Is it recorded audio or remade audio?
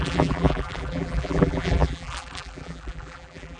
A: remade